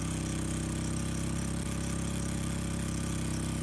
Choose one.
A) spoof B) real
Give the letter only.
B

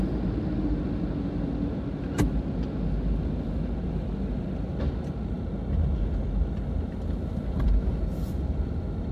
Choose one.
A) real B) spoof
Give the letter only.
A